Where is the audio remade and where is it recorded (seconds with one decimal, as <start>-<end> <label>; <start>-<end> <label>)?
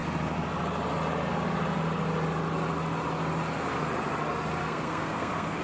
0.0-4.6 recorded; 4.6-5.6 remade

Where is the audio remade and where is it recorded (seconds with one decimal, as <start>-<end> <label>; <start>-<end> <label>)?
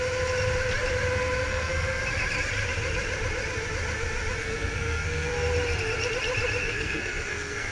0.0-1.5 recorded; 1.5-2.0 remade; 2.0-4.4 recorded; 4.4-5.3 remade; 5.3-6.6 recorded; 6.6-7.7 remade